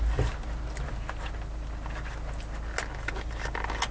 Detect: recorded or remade recorded